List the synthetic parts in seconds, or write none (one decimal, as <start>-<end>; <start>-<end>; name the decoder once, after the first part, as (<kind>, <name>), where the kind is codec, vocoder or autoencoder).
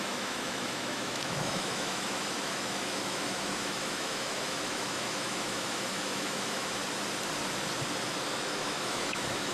0.0-6.8 (autoencoder, DAC-VAE); 8.4-9.5